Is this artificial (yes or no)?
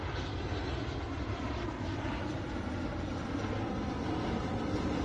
no